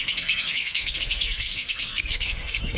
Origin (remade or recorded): remade